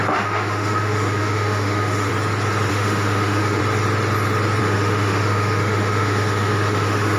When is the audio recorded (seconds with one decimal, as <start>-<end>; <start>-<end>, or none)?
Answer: 2.1-2.7; 3.6-4.6